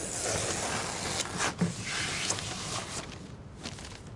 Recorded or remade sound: recorded